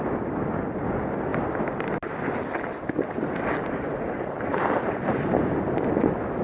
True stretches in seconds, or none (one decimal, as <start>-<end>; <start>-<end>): 0.0-1.3; 5.1-6.4